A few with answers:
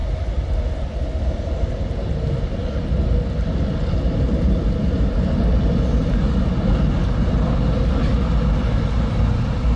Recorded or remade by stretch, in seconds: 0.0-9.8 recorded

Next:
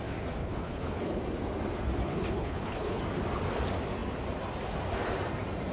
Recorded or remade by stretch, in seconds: 0.0-0.4 recorded; 0.4-1.2 remade; 1.2-2.0 recorded; 2.0-3.0 remade; 3.0-5.7 recorded

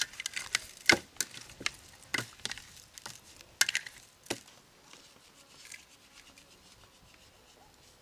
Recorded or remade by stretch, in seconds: 0.0-8.0 recorded

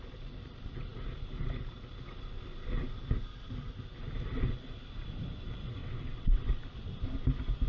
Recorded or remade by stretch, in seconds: 0.0-5.8 recorded; 5.8-6.5 remade; 6.5-7.7 recorded

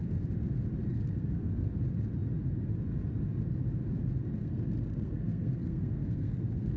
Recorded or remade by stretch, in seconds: 0.0-0.9 recorded; 0.9-1.7 remade; 1.7-4.4 recorded; 4.4-6.8 remade

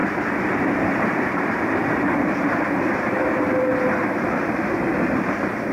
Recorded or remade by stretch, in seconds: 0.0-1.5 remade; 1.5-3.7 recorded; 3.7-4.8 remade; 4.8-5.7 recorded

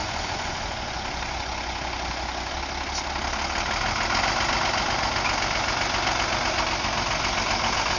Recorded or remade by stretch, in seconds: 0.0-2.5 remade; 2.5-8.0 recorded

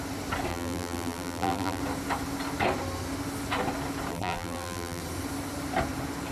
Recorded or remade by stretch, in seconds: 0.0-0.5 recorded; 0.5-1.8 remade; 1.8-4.1 recorded; 4.1-5.0 remade; 5.0-6.3 recorded